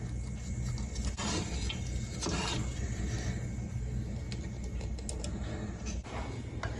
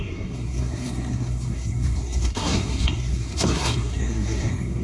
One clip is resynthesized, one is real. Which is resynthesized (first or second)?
second